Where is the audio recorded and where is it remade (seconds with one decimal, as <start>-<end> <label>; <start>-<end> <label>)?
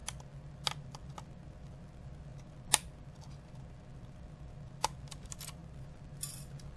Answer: 0.0-6.8 recorded